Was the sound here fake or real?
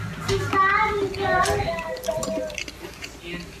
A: real